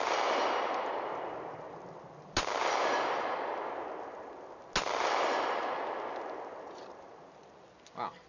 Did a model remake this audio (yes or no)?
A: no